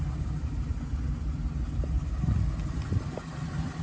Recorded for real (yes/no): yes